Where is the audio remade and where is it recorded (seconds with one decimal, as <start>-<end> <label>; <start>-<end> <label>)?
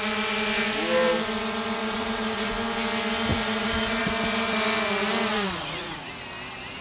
0.0-1.8 recorded; 1.8-2.5 remade; 2.5-3.3 recorded; 3.3-4.1 remade; 4.1-5.3 recorded; 5.3-6.2 remade; 6.2-6.8 recorded